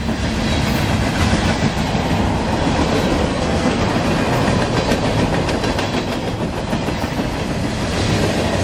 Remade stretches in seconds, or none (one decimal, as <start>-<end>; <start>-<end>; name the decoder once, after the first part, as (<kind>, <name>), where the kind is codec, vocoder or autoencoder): 3.3-3.8 (codec, SNAC)